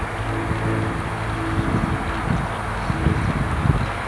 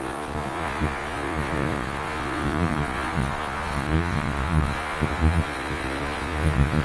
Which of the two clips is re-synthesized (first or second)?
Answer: second